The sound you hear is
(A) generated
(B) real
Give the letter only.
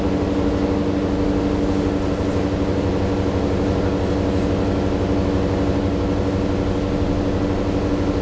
B